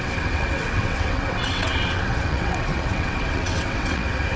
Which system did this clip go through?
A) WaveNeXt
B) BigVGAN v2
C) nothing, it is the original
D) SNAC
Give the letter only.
A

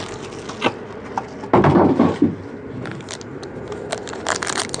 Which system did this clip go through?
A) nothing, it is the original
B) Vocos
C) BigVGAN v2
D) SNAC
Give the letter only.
A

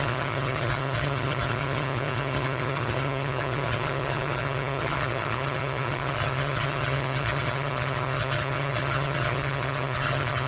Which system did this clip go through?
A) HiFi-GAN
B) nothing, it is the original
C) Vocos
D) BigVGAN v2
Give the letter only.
A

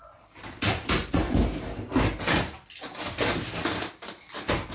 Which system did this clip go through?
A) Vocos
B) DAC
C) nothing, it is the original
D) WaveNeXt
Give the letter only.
C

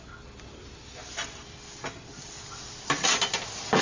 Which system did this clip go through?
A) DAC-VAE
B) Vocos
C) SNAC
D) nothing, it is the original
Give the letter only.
D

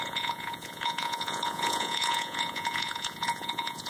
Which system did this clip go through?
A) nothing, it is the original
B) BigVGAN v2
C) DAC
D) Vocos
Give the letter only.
D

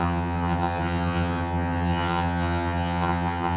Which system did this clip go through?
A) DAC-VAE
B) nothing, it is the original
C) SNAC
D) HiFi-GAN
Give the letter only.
D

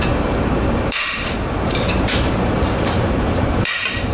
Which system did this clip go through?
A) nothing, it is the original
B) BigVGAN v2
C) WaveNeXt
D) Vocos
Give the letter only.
B